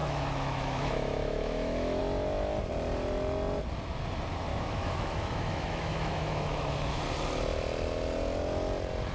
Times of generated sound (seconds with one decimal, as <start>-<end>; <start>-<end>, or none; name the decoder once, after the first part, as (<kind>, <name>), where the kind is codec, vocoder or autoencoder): 0.0-2.0 (autoencoder, DAC-VAE); 4.5-7.0